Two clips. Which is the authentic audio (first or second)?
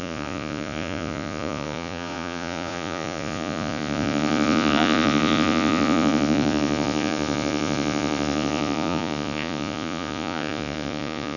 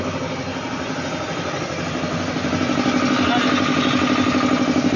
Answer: second